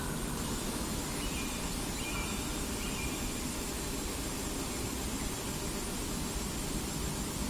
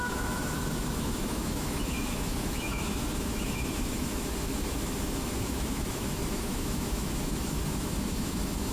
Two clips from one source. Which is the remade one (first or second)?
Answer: second